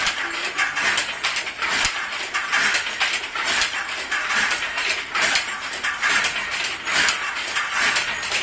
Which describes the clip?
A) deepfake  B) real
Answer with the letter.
B